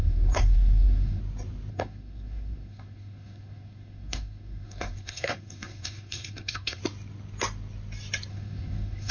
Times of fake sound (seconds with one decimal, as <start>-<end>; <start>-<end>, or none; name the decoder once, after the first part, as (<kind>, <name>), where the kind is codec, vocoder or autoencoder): 0.0-1.2 (codec, SNAC); 1.7-6.8; 8.3-9.1